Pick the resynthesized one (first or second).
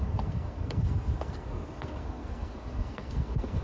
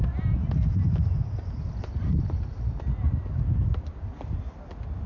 first